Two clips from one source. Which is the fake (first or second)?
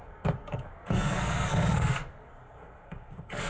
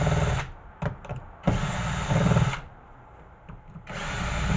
first